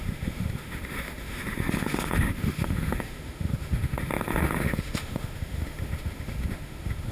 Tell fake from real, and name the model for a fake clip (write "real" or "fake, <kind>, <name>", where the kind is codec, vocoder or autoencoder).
fake, autoencoder, DAC-VAE